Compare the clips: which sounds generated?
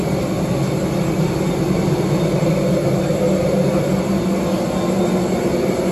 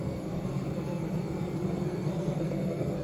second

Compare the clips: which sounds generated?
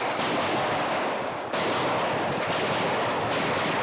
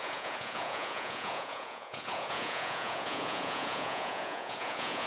second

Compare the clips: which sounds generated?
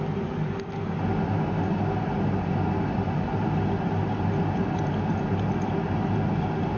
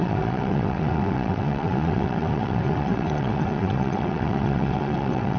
second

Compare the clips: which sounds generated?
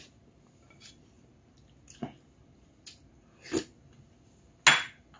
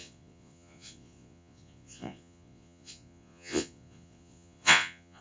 second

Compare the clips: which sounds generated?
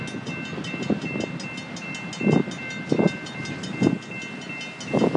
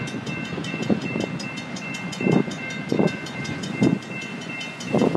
second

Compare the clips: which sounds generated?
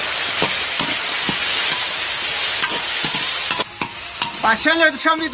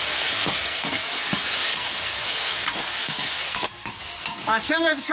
second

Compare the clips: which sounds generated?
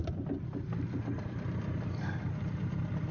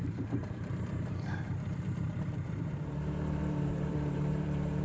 second